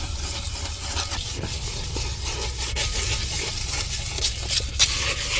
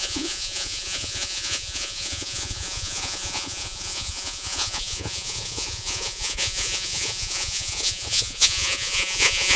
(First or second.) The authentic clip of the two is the first